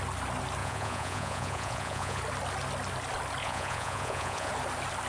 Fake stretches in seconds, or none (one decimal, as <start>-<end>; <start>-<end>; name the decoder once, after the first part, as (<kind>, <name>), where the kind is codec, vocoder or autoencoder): 0.6-2.2 (vocoder, Vocos); 3.4-4.5